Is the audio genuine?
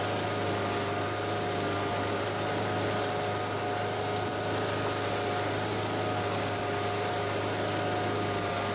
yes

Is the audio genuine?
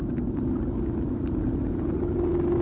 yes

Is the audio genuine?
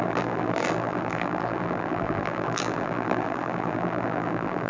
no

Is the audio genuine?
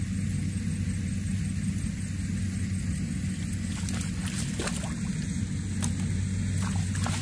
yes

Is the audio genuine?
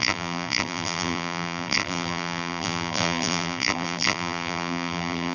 no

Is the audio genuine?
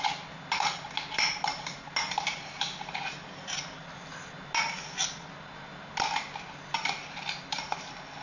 yes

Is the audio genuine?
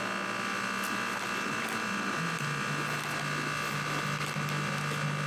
yes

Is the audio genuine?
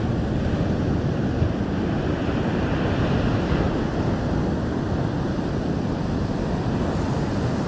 yes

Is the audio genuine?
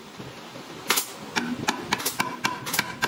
yes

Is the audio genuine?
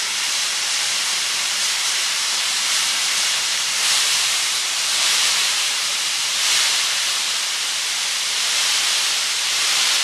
no